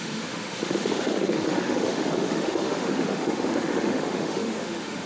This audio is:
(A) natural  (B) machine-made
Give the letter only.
B